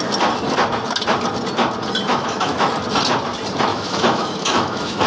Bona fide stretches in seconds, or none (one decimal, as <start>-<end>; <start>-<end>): 0.0-2.1; 2.7-3.7